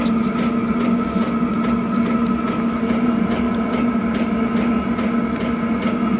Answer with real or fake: real